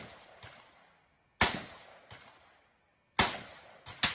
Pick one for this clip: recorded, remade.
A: recorded